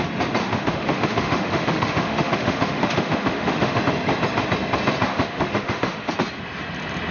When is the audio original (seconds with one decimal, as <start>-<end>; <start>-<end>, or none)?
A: 0.0-0.4; 3.8-5.1; 6.1-7.1